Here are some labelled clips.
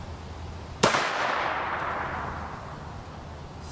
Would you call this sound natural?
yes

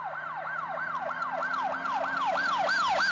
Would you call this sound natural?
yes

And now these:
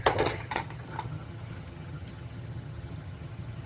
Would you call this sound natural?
no